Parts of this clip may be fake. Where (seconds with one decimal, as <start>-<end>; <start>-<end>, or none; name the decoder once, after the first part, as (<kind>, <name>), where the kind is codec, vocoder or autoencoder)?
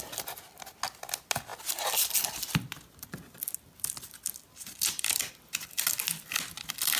none